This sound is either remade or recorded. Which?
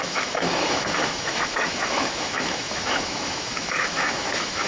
remade